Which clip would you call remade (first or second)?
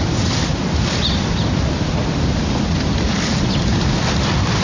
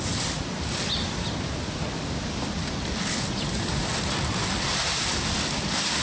first